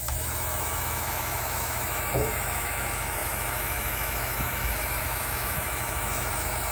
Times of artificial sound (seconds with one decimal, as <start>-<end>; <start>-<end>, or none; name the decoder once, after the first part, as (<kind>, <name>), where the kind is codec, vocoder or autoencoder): 0.0-6.7 (autoencoder, DAC-VAE)